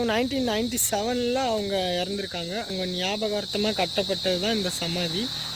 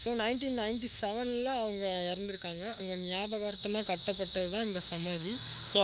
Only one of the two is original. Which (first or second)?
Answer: first